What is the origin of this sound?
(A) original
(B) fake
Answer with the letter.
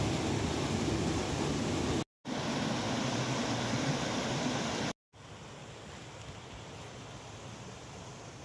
A